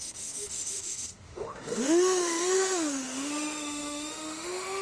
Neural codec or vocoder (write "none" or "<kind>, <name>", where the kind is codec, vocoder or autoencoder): autoencoder, DAC-VAE